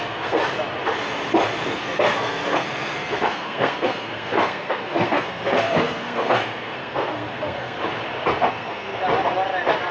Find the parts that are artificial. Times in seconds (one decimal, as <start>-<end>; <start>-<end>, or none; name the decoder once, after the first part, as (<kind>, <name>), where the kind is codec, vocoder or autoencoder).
0.0-0.4 (codec, SNAC); 1.7-7.8; 8.5-9.0